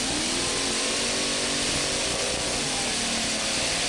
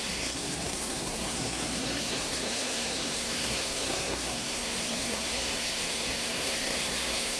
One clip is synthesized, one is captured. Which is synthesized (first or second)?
second